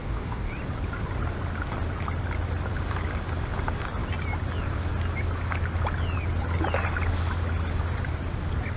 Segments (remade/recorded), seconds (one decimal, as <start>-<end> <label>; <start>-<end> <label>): 0.0-0.5 remade; 0.5-8.8 recorded